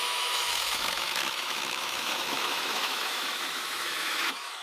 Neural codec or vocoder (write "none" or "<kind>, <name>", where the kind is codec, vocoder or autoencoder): autoencoder, DAC-VAE